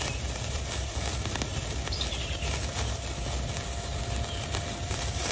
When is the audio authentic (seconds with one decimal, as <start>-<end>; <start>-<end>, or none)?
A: 1.5-4.7